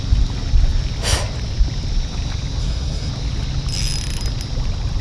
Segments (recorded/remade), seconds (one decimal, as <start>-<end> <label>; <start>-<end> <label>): 0.0-2.6 recorded; 2.6-3.1 remade; 3.1-5.0 recorded